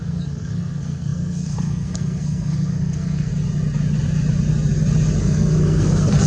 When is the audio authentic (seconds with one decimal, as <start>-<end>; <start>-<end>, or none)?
3.3-5.2